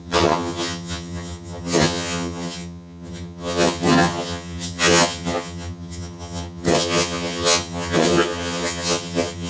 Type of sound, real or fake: fake